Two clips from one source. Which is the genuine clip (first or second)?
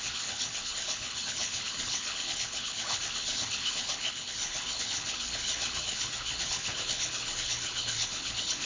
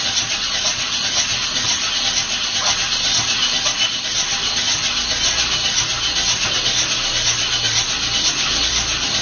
second